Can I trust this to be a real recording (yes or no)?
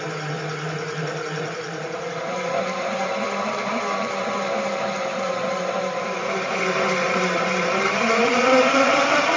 no